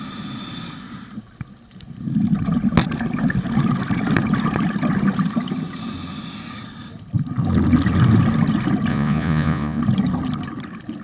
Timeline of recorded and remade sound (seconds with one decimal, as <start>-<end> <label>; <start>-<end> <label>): 0.0-8.9 recorded; 8.9-9.8 remade; 9.8-11.0 recorded